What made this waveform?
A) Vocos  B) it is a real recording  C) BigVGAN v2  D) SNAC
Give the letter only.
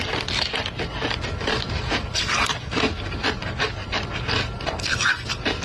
B